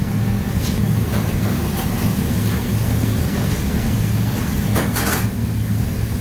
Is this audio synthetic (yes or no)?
yes